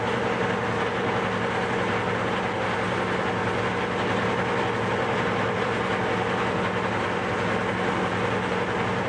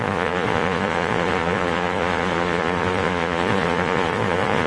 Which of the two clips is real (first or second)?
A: first